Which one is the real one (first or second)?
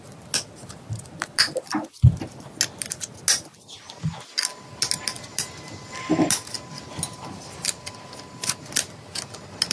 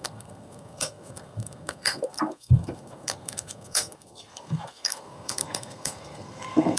first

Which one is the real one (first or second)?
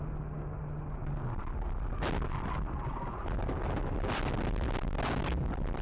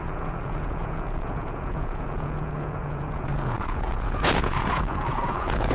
first